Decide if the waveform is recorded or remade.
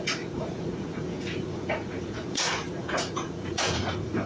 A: remade